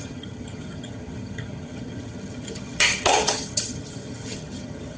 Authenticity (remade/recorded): remade